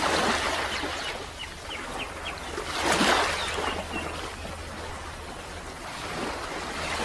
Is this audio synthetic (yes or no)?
no